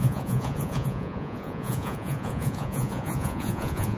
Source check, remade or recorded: remade